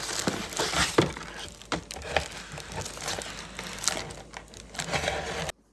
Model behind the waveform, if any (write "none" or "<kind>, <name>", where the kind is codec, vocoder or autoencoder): none